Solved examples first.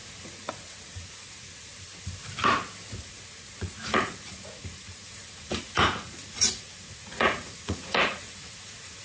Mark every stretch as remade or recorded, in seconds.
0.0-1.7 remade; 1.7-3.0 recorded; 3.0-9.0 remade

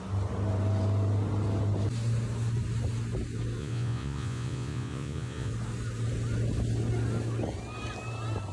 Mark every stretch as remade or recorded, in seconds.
0.0-3.6 recorded; 3.6-5.5 remade; 5.5-8.5 recorded

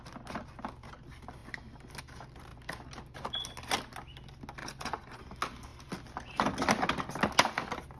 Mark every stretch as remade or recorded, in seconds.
0.0-4.6 recorded; 4.6-5.2 remade; 5.2-8.0 recorded

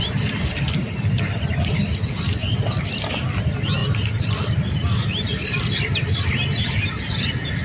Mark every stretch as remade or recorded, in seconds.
0.0-7.6 recorded